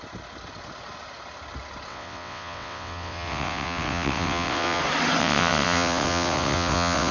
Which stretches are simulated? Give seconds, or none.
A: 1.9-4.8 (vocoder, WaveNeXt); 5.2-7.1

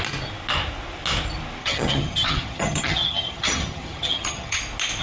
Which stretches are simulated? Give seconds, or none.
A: 1.6-4.6 (vocoder, HiFi-GAN)

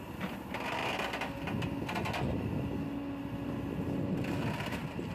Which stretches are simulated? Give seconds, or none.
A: none

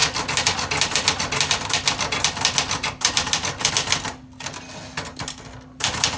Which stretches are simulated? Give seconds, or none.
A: none

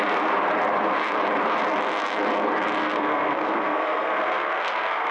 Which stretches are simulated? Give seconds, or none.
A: 2.8-5.1 (codec, SNAC)

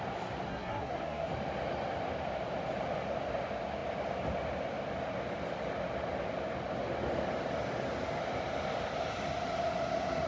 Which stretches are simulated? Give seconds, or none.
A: 0.5-1.3 (codec, SNAC)

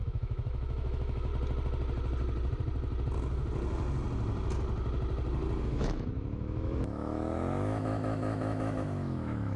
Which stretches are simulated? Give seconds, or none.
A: 0.0-1.3 (autoencoder, DAC-VAE); 5.6-9.6